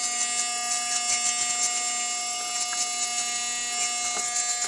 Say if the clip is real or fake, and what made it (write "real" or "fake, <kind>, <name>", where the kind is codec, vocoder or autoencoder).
real